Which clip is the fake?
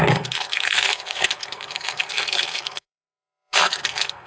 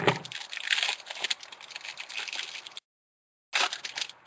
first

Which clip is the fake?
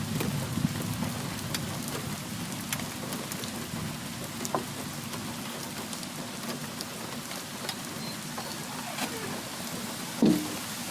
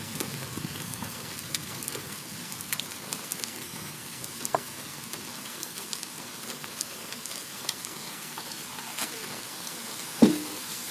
second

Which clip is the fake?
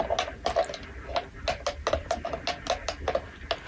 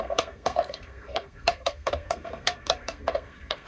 second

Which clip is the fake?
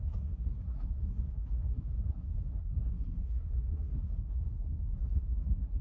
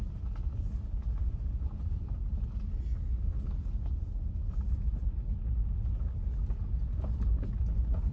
first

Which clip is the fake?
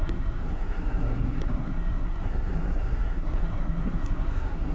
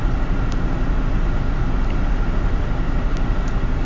first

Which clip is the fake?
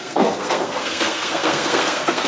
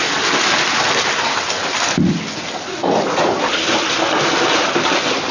first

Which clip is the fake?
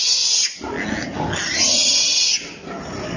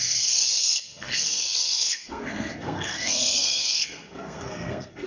second